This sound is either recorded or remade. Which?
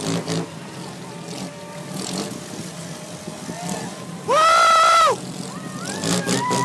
recorded